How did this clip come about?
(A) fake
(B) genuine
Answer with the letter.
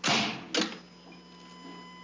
B